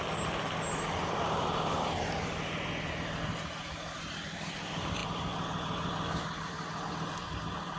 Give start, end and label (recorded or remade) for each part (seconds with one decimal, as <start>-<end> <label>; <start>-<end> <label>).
0.0-7.8 recorded